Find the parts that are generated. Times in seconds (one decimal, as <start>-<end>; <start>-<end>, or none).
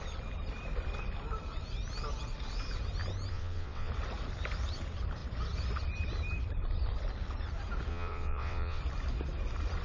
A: 3.3-3.9; 7.9-8.8